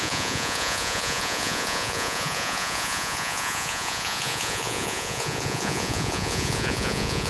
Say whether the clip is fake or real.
fake